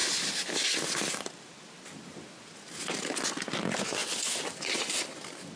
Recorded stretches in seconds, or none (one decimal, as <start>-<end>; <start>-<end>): 0.0-5.6